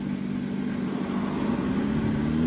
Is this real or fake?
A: real